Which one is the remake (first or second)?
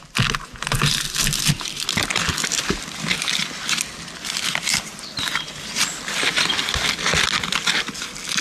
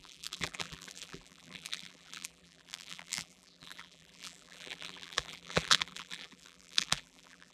second